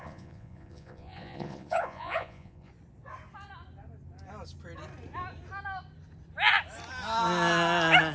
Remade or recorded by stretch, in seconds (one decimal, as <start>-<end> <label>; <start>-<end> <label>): 0.0-2.7 remade; 2.7-8.1 recorded